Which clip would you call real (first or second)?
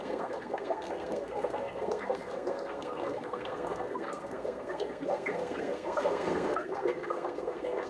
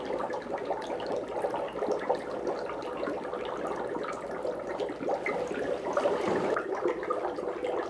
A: second